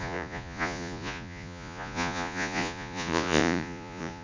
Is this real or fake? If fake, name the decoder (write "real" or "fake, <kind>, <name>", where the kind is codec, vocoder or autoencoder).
fake, vocoder, Vocos